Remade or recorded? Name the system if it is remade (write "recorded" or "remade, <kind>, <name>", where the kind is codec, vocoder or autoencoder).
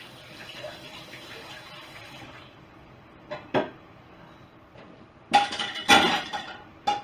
recorded